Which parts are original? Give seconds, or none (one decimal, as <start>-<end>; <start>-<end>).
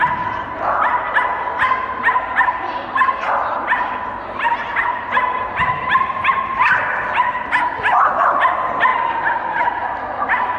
0.0-10.6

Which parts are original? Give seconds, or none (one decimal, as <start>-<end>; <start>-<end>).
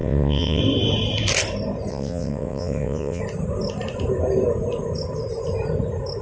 0.6-1.9; 3.2-6.2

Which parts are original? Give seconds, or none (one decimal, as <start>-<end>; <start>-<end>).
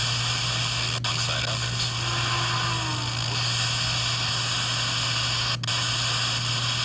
0.0-6.8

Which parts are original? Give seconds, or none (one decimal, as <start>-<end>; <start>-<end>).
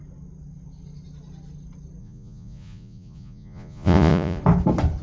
0.0-2.0; 4.4-5.0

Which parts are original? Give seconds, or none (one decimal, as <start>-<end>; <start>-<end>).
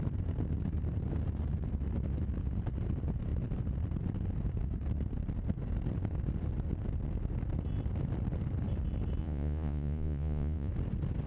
0.0-9.2; 10.7-11.3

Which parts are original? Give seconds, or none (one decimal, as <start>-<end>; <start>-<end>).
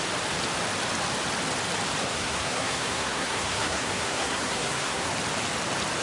0.0-2.0; 5.1-6.0